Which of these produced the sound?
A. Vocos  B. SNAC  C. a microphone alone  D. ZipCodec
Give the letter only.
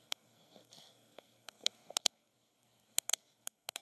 B